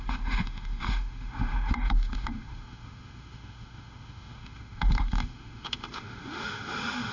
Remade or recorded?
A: remade